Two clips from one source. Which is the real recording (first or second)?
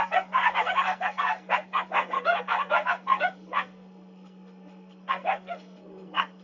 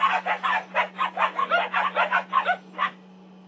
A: second